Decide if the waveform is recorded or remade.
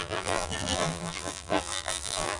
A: remade